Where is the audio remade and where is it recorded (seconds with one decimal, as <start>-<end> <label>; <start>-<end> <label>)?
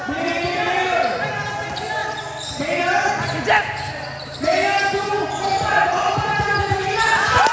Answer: 0.0-7.5 recorded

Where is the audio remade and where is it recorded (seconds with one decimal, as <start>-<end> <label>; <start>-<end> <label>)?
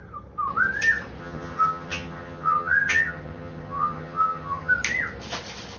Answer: 0.0-1.2 recorded; 1.2-4.7 remade; 4.7-5.8 recorded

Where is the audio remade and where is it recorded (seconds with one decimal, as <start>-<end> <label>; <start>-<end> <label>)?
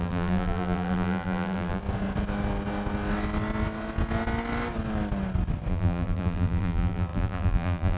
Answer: 0.0-1.8 remade; 1.8-5.7 recorded; 5.7-8.0 remade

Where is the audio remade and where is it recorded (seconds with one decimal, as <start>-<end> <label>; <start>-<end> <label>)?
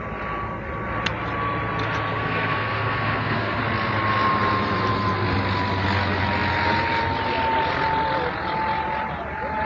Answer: 0.0-2.1 recorded; 2.1-3.6 remade; 3.6-9.7 recorded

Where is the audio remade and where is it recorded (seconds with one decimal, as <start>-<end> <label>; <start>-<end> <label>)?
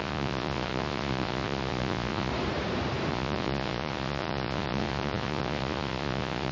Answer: 0.0-2.3 remade; 2.3-3.1 recorded; 3.1-6.5 remade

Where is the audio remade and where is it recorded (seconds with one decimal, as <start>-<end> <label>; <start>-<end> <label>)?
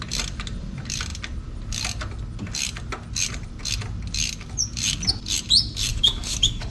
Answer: 0.0-5.9 recorded; 5.9-6.7 remade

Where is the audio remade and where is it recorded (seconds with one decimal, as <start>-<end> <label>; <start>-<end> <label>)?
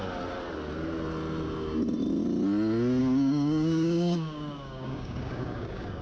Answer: 0.0-3.0 recorded; 3.0-6.0 remade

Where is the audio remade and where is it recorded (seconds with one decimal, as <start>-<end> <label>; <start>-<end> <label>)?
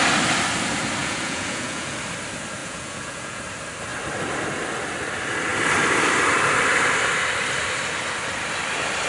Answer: 0.0-1.0 recorded; 1.0-2.0 remade; 2.0-2.6 recorded; 2.6-3.4 remade; 3.4-9.1 recorded